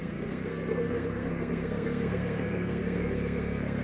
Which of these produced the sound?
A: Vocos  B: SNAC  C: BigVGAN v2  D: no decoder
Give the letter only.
B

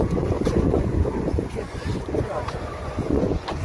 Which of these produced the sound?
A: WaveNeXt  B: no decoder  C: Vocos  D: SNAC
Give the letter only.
C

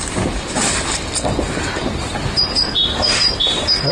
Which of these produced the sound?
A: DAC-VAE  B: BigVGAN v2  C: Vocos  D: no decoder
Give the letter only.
D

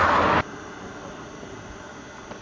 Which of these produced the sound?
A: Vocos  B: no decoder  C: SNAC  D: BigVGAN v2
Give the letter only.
D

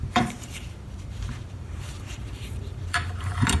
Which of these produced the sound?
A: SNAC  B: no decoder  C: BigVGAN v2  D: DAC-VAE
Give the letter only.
C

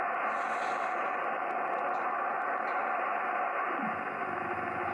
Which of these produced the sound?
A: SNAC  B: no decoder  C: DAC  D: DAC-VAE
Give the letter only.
B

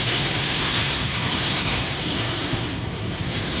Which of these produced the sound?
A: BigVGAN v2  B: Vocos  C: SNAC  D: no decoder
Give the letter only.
C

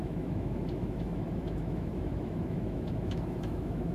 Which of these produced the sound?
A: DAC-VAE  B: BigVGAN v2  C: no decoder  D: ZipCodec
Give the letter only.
A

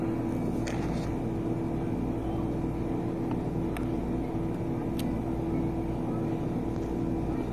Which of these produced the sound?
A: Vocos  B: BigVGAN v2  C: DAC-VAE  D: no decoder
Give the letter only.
D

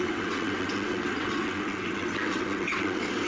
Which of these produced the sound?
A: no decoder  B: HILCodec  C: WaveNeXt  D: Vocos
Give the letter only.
C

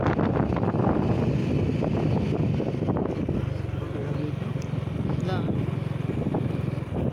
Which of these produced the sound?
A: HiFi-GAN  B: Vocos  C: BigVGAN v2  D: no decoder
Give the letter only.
D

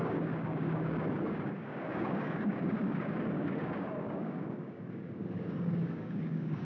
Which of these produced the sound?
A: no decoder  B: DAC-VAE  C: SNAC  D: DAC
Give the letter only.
D